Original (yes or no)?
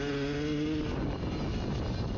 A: yes